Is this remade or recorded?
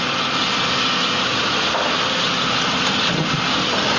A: recorded